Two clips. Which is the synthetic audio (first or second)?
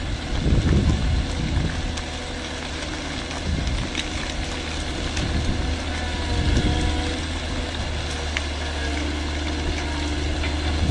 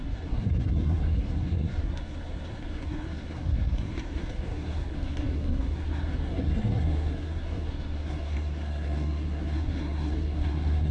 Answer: second